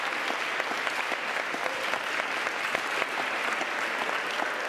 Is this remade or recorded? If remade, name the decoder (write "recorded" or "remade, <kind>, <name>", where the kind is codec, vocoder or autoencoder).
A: recorded